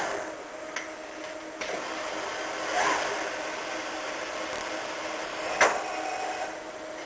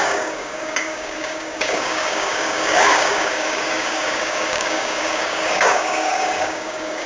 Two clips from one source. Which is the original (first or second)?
first